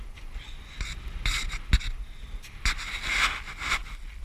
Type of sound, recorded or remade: recorded